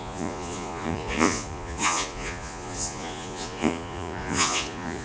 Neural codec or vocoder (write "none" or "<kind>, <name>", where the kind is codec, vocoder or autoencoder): vocoder, Vocos